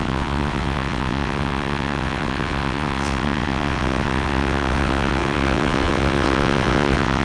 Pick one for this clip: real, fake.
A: fake